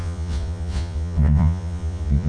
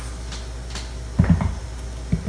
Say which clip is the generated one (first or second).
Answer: first